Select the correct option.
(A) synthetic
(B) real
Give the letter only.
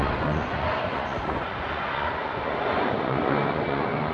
A